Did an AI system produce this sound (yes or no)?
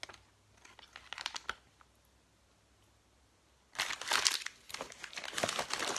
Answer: no